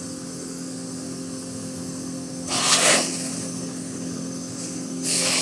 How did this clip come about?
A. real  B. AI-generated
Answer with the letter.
B